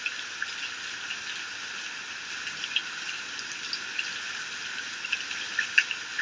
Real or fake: real